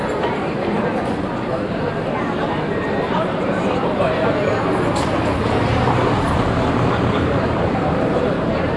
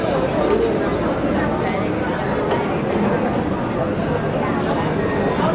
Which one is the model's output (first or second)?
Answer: first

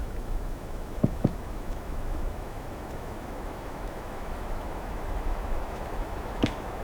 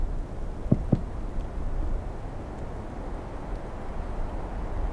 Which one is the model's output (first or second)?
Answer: first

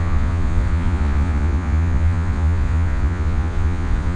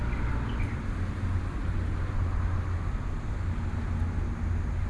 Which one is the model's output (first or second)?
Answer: first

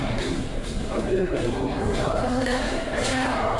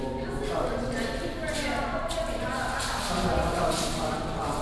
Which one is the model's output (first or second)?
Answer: first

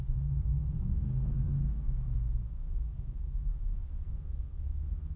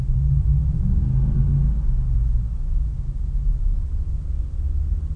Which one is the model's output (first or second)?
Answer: first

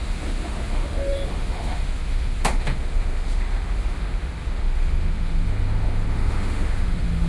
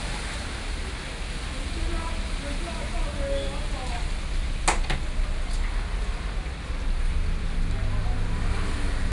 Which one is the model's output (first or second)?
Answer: first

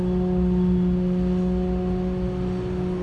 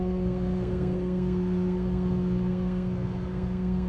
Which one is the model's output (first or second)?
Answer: second